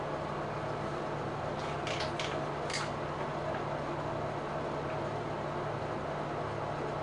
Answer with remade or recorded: recorded